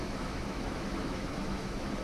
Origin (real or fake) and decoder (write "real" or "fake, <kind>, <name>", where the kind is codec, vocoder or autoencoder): fake, autoencoder, DAC-VAE